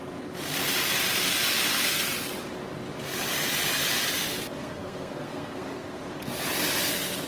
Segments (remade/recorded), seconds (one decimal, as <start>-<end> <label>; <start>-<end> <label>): 0.0-4.6 recorded; 4.6-6.1 remade; 6.1-7.3 recorded